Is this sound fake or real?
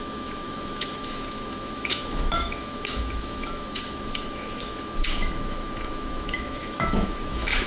fake